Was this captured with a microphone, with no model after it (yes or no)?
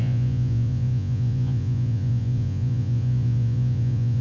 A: no